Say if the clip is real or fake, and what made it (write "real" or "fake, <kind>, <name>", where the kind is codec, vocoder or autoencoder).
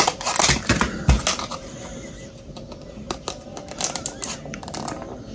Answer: real